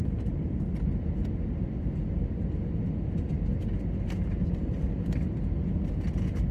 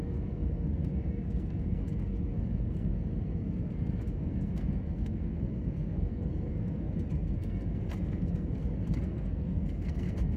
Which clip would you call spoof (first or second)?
second